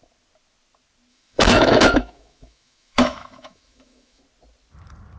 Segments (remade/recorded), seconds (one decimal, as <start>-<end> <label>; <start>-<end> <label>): 0.0-1.1 recorded; 1.1-4.2 remade; 4.2-5.2 recorded